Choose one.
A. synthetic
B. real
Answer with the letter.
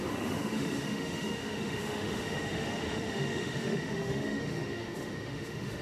A